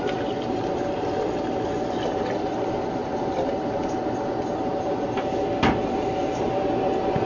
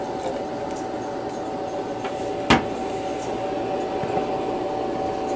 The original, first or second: second